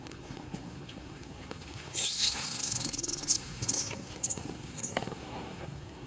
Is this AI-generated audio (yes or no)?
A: yes